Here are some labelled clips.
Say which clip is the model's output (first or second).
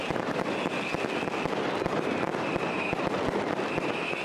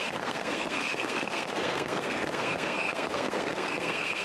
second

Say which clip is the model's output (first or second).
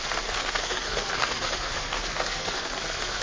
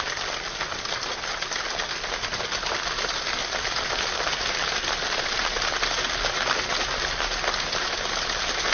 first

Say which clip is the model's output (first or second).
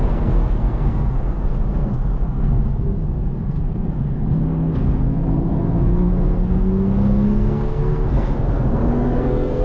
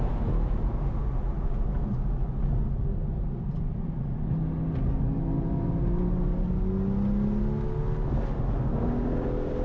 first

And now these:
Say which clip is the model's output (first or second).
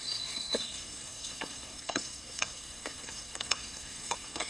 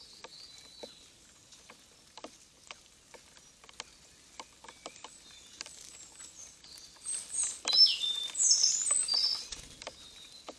first